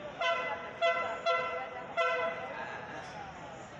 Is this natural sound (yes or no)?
yes